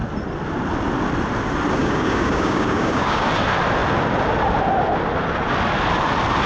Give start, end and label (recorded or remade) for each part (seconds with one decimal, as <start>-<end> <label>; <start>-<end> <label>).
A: 0.0-1.8 recorded; 1.8-3.3 remade; 3.3-6.5 recorded